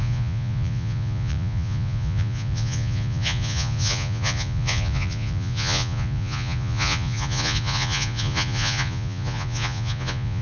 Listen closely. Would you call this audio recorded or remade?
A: remade